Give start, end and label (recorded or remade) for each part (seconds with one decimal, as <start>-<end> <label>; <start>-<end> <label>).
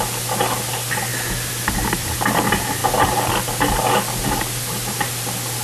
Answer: 0.0-5.6 recorded